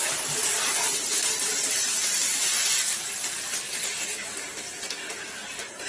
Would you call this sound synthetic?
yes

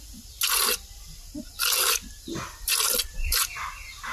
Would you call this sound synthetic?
no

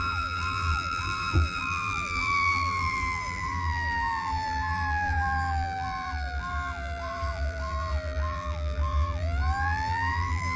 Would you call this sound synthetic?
yes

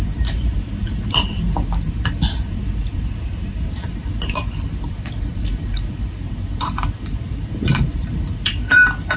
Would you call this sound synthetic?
yes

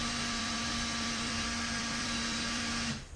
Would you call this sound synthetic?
yes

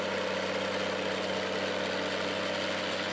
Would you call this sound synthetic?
no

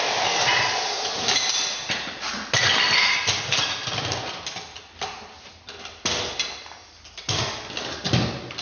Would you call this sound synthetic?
no